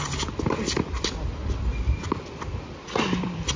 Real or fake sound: real